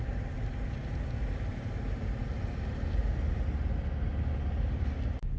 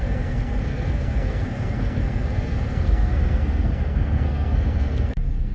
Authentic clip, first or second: first